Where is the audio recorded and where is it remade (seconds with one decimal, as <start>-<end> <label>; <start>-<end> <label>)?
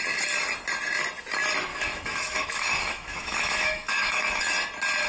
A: 0.0-1.7 recorded; 1.7-4.5 remade; 4.5-5.1 recorded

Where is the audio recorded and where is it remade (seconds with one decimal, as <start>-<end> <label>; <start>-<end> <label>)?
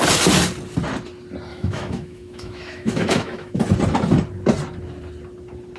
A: 0.0-1.5 recorded; 1.5-3.6 remade; 3.6-5.8 recorded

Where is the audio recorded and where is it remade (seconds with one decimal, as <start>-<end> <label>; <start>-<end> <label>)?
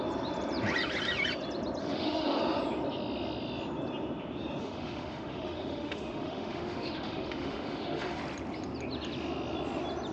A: 0.0-1.8 recorded; 1.8-2.4 remade; 2.4-4.6 recorded; 4.6-8.2 remade; 8.2-10.1 recorded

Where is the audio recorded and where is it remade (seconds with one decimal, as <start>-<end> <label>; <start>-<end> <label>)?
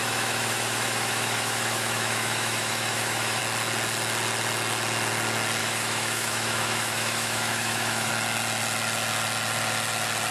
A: 0.0-3.4 remade; 3.4-5.6 recorded; 5.6-8.1 remade; 8.1-10.3 recorded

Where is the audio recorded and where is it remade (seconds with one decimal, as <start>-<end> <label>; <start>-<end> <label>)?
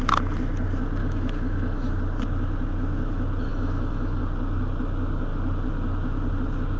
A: 0.0-1.0 recorded; 1.0-1.9 remade; 1.9-3.5 recorded; 3.5-4.2 remade; 4.2-6.8 recorded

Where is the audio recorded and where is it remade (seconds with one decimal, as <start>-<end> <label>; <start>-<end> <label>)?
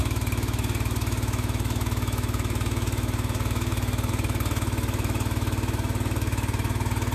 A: 0.0-7.1 remade